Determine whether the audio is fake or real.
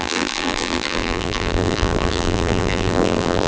fake